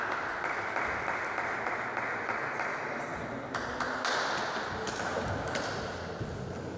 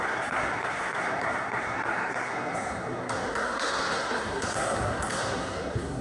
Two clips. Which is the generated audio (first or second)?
second